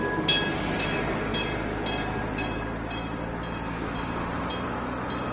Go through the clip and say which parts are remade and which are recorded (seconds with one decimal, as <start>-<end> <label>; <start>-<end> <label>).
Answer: 0.0-5.3 recorded